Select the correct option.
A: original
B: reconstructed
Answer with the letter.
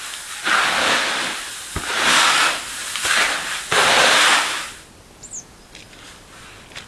A